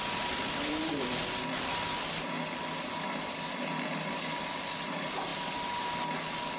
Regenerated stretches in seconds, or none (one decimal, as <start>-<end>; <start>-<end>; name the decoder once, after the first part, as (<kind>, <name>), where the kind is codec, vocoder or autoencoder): none